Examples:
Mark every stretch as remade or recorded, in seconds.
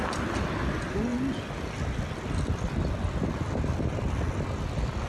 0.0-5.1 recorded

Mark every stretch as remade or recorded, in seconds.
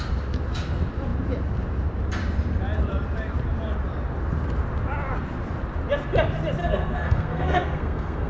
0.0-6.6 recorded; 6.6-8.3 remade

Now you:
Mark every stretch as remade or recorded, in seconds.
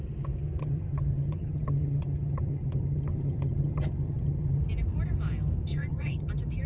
0.0-0.6 recorded; 0.6-4.6 remade; 4.6-5.7 recorded; 5.7-6.3 remade; 6.3-6.7 recorded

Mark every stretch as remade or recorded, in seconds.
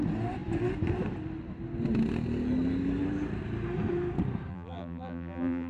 0.0-4.5 recorded; 4.5-5.7 remade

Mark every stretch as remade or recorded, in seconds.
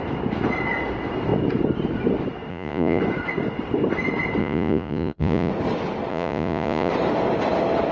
0.0-2.5 recorded; 2.5-3.0 remade; 3.0-4.4 recorded; 4.4-5.5 remade; 5.5-6.1 recorded; 6.1-6.9 remade; 6.9-7.9 recorded